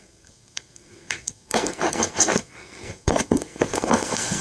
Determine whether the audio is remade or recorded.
remade